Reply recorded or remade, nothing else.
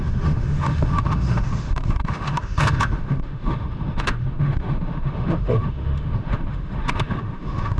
remade